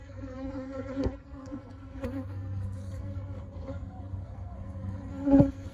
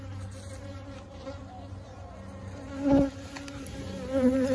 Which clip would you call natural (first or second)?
second